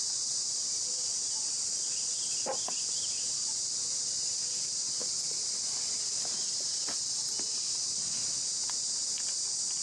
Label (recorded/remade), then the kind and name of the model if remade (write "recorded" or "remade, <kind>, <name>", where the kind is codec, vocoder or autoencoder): recorded